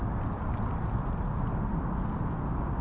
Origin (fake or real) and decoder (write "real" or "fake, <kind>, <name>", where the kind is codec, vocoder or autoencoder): real